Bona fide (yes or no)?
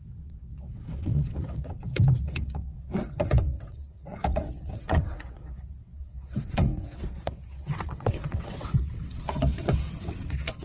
no